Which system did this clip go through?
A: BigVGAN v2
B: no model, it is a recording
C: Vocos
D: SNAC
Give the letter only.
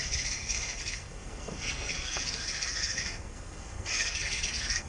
D